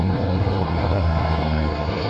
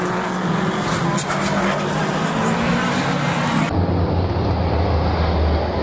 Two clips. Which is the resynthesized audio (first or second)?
first